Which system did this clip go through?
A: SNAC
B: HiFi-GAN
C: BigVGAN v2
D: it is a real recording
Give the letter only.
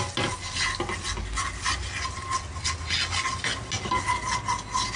D